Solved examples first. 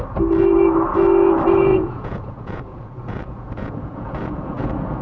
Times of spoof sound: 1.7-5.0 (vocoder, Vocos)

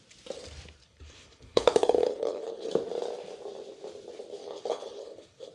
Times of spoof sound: 0.8-2.7 (codec, HILCodec); 4.4-5.5

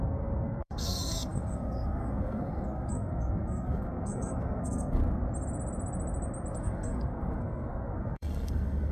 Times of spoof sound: 0.0-5.0 (codec, SNAC); 6.6-8.9

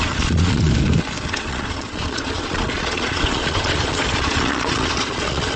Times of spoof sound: 0.0-0.7 (vocoder, Vocos); 1.3-5.6

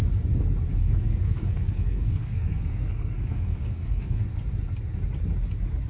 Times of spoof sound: 0.7-4.2 (codec, SNAC)

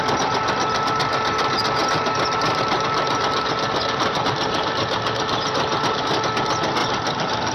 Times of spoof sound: 1.8-6.1 (vocoder, BigVGAN v2); 6.8-7.5

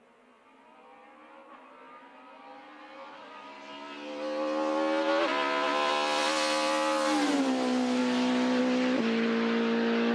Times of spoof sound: none